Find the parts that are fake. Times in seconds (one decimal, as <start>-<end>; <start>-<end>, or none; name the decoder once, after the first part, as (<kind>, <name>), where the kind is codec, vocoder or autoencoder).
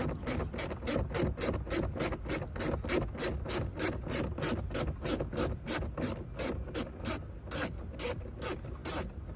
none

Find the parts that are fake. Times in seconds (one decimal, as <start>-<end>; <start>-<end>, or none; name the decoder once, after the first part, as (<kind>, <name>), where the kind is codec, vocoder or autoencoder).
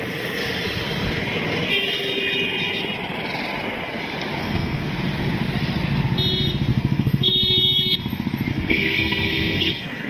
4.4-4.9 (codec, SNAC); 6.7-8.0; 8.5-10.1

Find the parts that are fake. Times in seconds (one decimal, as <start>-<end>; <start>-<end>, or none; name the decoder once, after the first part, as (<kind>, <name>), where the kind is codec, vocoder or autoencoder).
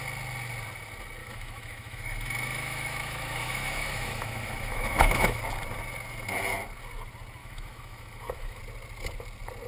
1.2-5.4 (autoencoder, DAC-VAE); 7.4-8.6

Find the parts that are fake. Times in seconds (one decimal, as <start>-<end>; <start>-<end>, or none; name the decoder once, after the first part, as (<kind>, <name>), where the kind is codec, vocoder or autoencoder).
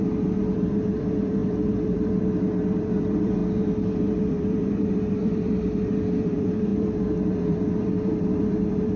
0.0-9.0 (vocoder, BigVGAN v2)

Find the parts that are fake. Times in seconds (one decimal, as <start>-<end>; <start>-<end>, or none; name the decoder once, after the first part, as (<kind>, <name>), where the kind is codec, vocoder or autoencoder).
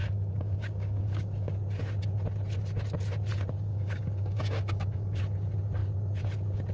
0.0-1.5 (codec, DAC); 3.7-5.2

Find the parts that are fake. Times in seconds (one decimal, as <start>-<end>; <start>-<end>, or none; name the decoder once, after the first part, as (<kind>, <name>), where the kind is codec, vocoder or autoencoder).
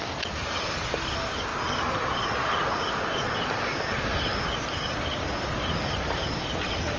none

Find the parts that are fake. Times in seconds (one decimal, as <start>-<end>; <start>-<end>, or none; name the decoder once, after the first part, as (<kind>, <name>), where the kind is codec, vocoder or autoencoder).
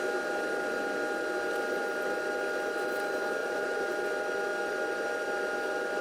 3.4-3.9 (vocoder, BigVGAN v2)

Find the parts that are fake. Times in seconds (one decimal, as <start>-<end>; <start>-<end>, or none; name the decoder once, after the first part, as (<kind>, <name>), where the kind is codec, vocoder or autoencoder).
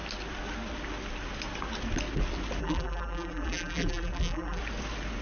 2.6-4.6 (vocoder, BigVGAN v2)